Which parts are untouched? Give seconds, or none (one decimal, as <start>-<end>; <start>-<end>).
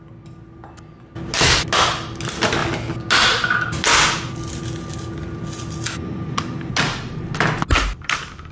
0.0-8.5